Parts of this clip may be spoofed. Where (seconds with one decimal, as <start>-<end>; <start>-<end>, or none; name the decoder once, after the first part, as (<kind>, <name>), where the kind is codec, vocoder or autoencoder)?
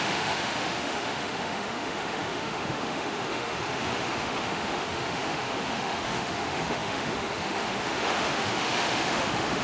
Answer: 0.0-9.6 (autoencoder, DAC-VAE)